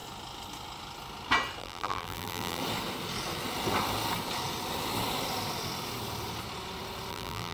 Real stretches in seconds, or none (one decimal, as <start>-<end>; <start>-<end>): 0.0-1.6; 2.6-7.1